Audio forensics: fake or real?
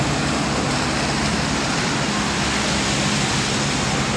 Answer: real